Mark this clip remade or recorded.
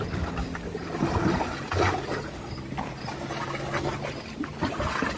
recorded